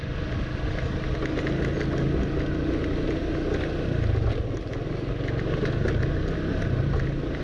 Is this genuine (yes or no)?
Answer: yes